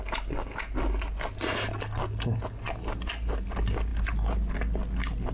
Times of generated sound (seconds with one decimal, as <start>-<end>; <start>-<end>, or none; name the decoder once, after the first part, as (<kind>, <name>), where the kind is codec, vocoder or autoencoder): none

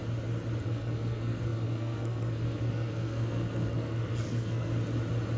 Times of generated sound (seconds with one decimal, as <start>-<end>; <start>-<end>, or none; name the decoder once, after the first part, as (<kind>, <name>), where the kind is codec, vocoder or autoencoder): 0.6-4.7 (codec, SNAC)

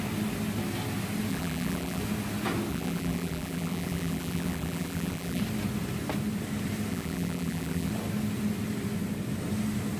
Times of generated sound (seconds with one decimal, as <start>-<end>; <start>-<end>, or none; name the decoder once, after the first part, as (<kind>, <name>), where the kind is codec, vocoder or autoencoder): 1.3-2.0 (vocoder, BigVGAN v2); 2.7-5.4; 6.9-7.9

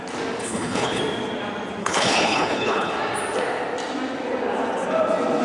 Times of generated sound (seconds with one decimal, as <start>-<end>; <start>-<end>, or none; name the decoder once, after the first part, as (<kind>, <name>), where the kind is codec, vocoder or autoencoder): 0.4-1.0 (codec, HILCodec); 1.8-2.9

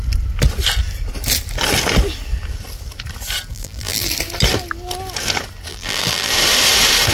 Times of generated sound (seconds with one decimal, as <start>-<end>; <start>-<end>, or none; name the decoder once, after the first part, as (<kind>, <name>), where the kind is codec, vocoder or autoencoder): 3.5-4.1 (vocoder, BigVGAN v2); 5.7-6.3